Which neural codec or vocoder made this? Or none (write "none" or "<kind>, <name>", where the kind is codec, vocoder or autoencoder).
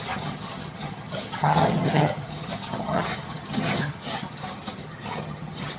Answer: vocoder, HiFi-GAN